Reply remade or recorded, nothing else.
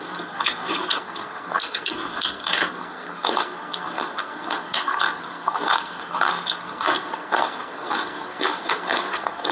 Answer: remade